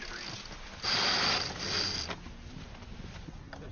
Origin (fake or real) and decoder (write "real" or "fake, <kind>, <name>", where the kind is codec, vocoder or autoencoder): real